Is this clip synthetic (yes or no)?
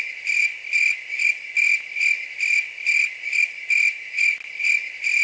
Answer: no